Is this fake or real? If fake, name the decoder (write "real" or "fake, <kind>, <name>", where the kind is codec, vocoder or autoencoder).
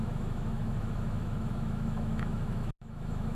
fake, autoencoder, DAC-VAE